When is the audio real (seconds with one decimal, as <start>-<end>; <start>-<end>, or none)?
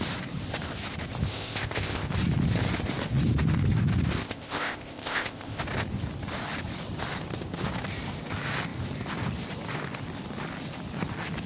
0.0-1.3; 2.1-4.2; 5.6-11.5